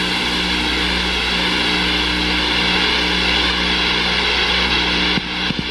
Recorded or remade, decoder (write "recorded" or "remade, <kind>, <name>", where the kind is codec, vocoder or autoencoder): recorded